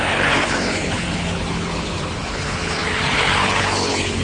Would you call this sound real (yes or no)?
no